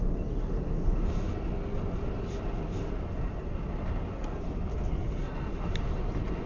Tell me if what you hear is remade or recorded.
recorded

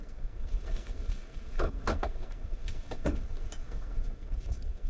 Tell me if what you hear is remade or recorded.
remade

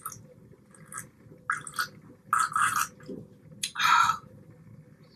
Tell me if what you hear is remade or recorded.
recorded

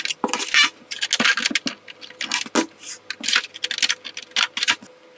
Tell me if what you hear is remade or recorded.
recorded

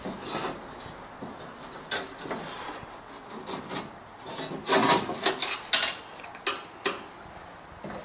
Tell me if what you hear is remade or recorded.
recorded